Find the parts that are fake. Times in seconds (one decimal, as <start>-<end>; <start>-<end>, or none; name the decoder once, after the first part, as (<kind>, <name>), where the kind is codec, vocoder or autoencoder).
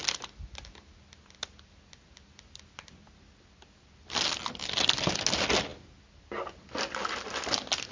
none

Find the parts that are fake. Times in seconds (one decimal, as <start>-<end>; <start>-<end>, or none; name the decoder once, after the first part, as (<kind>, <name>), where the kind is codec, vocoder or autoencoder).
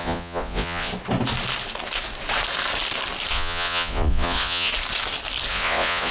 0.0-0.9 (vocoder, Vocos); 3.3-4.7; 5.5-6.1